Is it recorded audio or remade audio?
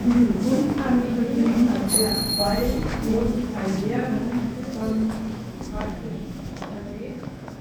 remade